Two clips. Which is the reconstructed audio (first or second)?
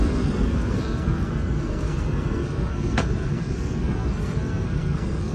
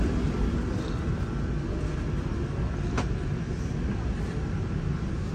first